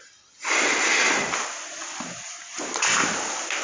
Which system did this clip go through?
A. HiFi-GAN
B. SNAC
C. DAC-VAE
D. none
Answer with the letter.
D